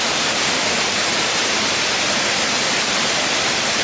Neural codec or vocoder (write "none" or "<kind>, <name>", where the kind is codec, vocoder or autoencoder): none